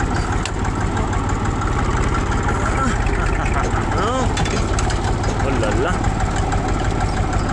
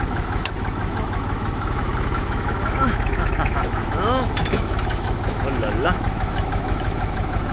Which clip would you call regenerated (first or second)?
second